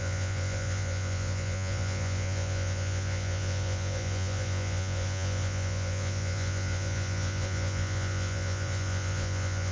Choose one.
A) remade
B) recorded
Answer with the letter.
A